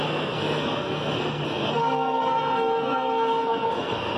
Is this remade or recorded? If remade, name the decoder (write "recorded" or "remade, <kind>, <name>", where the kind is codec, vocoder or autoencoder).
remade, codec, SNAC